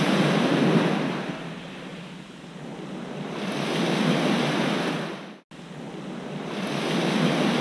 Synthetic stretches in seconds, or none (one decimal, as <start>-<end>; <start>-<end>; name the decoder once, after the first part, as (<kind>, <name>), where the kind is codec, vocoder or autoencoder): none